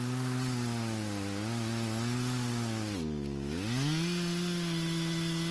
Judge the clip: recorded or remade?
recorded